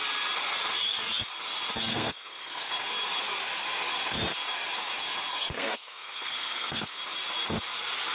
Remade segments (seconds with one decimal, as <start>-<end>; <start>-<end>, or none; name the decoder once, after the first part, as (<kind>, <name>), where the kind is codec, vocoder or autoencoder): 1.9-2.7 (codec, SNAC); 5.3-7.0